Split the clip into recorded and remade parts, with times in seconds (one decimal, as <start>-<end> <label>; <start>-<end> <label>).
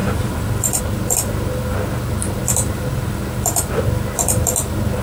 0.0-0.8 remade; 0.8-5.0 recorded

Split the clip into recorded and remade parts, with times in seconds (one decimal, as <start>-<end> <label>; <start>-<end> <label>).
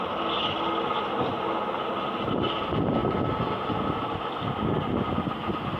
0.0-5.8 recorded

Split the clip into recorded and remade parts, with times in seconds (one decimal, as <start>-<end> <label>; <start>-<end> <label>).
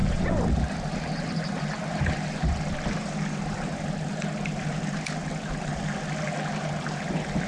0.0-2.1 remade; 2.1-7.5 recorded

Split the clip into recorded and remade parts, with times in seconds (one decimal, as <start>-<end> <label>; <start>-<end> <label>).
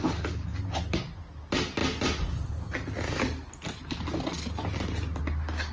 0.0-5.7 recorded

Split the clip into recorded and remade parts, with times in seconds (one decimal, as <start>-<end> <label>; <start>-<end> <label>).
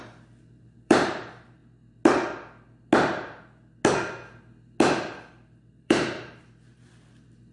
0.0-1.6 remade; 1.6-5.7 recorded; 5.7-7.5 remade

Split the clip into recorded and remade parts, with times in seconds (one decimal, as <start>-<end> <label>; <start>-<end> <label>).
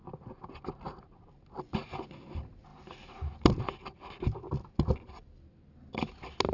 0.0-2.7 recorded; 2.7-5.7 remade; 5.7-6.5 recorded